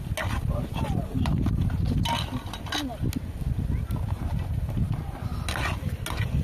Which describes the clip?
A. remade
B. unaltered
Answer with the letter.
B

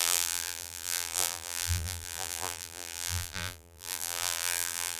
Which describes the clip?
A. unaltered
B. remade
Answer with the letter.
B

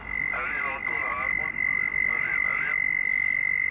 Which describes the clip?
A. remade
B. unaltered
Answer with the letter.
B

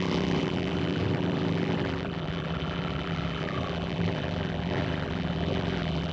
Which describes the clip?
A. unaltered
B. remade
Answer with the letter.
B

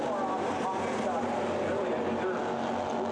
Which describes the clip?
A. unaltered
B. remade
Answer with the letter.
A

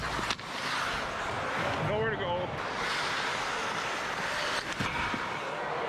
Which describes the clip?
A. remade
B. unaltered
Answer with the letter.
B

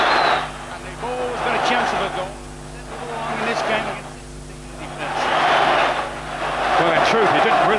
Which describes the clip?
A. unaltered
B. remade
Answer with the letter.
A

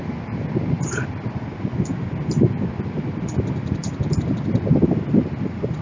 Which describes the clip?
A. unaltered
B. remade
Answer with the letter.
A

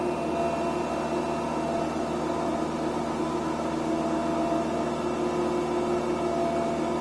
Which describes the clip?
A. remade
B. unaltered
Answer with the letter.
B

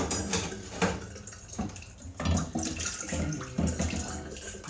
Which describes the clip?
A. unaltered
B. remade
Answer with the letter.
A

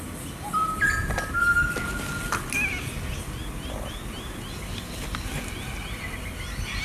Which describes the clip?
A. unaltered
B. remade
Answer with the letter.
A